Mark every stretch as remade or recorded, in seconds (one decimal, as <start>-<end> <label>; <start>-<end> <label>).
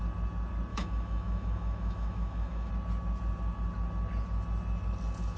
0.0-0.7 recorded; 0.7-2.7 remade; 2.7-5.4 recorded